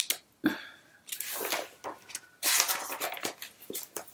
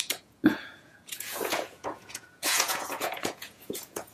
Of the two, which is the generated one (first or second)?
second